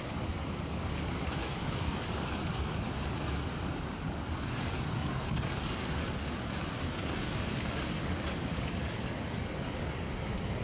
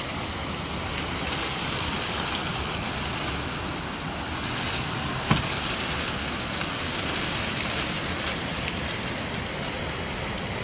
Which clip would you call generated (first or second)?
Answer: first